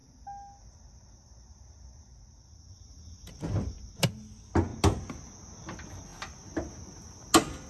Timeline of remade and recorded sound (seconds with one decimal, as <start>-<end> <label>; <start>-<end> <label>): 0.0-7.7 recorded